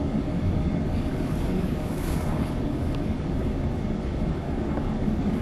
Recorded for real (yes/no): no